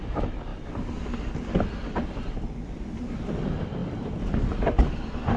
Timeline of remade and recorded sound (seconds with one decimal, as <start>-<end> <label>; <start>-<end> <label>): 0.0-5.4 recorded